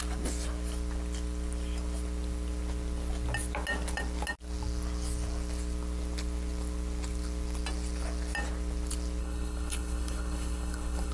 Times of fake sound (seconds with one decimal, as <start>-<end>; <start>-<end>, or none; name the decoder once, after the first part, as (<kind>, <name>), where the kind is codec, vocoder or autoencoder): 9.2-11.1 (codec, HILCodec)